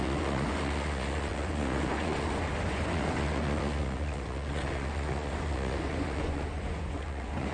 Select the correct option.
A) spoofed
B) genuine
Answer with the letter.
A